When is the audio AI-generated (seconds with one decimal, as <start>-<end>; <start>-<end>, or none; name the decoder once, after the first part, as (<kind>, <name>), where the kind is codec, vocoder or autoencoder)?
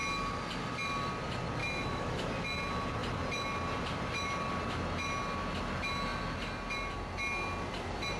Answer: 1.6-2.3 (autoencoder, DAC-VAE)